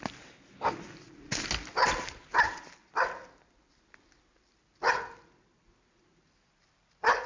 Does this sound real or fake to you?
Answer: real